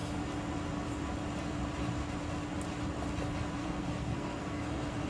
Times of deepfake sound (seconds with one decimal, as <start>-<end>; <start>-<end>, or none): 3.6-5.1